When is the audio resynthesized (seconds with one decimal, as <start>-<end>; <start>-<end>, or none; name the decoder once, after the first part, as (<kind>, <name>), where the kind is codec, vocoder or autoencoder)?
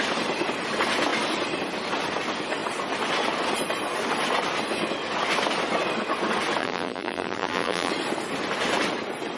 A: 6.6-7.9 (vocoder, BigVGAN v2)